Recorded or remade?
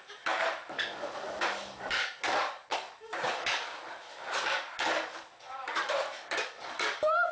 remade